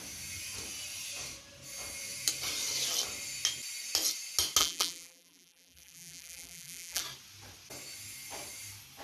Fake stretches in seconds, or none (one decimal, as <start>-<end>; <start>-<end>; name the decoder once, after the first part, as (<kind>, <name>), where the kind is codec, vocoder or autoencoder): 4.6-7.0 (vocoder, BigVGAN v2)